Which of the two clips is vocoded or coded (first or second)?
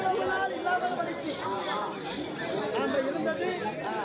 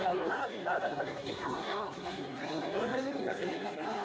second